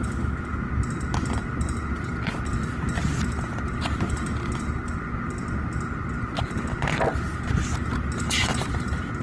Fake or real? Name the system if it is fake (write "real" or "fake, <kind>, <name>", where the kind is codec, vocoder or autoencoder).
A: real